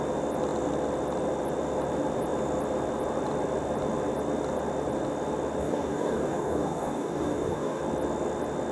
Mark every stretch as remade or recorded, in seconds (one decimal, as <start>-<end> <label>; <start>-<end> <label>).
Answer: 0.0-5.6 recorded; 5.6-7.8 remade; 7.8-8.7 recorded